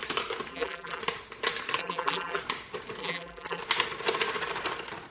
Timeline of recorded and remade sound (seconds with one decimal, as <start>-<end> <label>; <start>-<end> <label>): 0.0-0.5 recorded; 0.5-1.0 remade; 1.0-1.8 recorded; 1.8-2.4 remade; 2.4-3.0 recorded; 3.0-3.6 remade; 3.6-5.1 recorded